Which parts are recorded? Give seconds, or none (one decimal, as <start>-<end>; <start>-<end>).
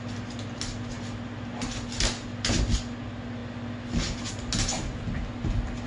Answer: 0.0-5.9